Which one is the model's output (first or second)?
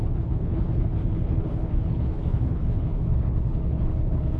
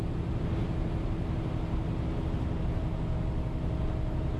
first